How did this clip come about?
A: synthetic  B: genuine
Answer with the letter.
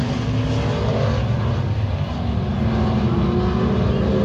B